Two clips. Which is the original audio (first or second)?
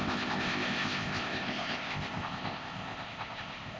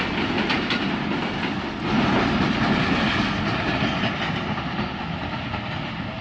second